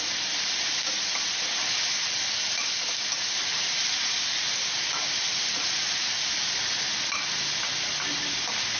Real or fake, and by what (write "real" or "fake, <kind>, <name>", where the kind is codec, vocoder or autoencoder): real